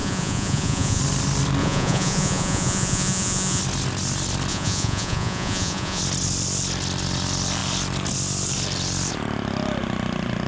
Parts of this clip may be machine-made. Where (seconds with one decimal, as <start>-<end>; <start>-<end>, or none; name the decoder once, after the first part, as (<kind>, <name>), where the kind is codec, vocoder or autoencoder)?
0.0-1.0 (vocoder, Vocos); 1.6-3.6; 4.5-6.0